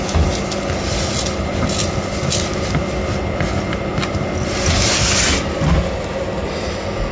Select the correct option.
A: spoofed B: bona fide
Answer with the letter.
B